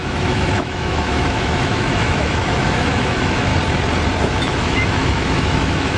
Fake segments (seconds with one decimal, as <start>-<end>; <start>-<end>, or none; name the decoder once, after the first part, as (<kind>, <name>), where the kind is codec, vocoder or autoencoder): 0.0-3.5 (autoencoder, DAC-VAE); 4.2-6.0